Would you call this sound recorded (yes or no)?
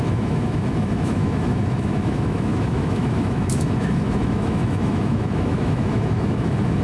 no